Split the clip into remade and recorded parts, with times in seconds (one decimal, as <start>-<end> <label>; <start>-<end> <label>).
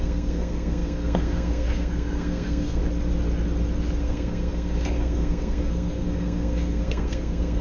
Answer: 0.0-2.8 remade; 2.8-4.0 recorded; 4.0-7.6 remade